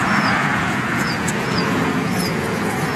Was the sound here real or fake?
fake